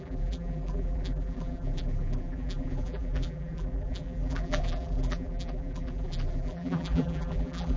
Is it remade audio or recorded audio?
remade